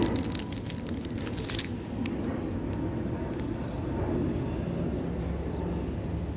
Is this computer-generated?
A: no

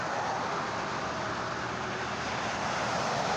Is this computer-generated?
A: yes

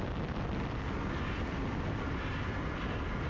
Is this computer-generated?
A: no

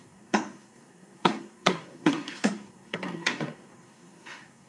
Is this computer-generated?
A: yes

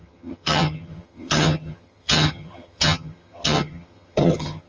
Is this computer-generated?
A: yes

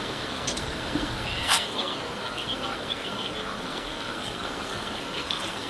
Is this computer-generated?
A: yes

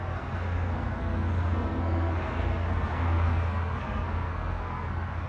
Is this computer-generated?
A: yes